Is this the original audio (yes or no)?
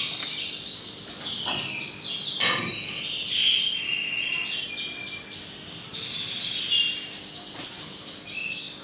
yes